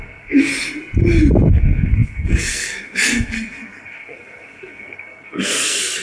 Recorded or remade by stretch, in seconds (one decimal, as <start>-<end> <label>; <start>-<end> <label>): 0.0-0.5 remade; 0.5-1.5 recorded; 1.5-6.0 remade